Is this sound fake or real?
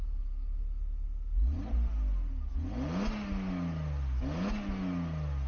real